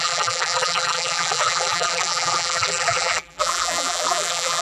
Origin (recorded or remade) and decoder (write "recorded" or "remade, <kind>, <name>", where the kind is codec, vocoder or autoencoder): remade, vocoder, BigVGAN v2